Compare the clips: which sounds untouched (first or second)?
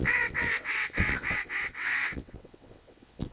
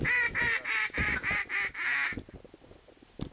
second